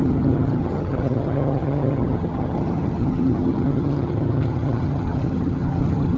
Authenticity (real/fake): fake